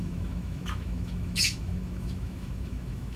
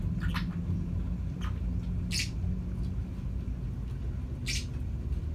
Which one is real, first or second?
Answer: second